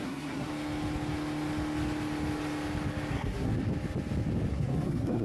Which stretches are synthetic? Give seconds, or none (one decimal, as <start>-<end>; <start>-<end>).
0.0-0.5; 3.1-3.5; 4.5-5.2